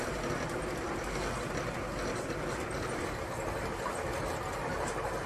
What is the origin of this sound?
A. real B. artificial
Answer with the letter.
A